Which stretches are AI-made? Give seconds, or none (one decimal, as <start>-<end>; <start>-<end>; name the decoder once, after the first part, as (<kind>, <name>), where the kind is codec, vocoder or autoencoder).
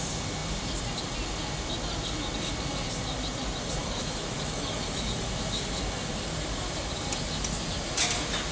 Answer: 3.8-5.3 (autoencoder, DAC-VAE)